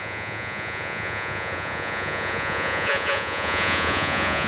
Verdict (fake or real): fake